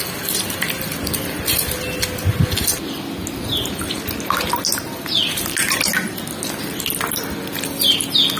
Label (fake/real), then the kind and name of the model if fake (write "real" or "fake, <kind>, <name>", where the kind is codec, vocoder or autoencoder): real